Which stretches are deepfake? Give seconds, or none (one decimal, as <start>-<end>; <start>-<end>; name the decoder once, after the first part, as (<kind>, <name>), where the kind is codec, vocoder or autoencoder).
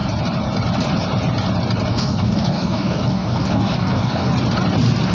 1.9-4.3 (codec, DAC)